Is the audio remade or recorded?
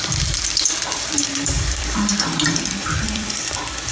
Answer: remade